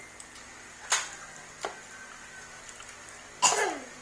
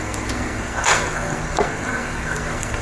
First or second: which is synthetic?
second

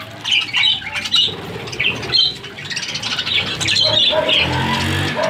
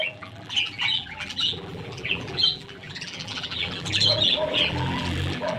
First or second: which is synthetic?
second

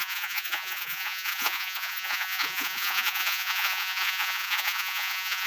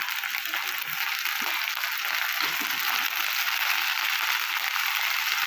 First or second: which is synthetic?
first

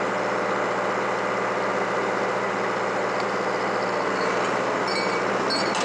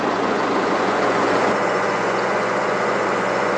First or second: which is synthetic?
second